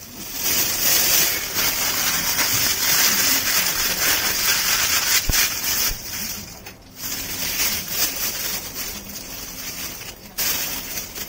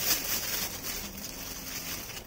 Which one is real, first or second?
second